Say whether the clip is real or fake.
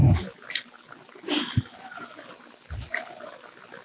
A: real